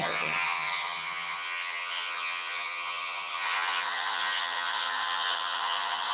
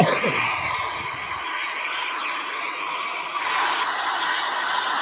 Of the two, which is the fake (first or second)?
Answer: first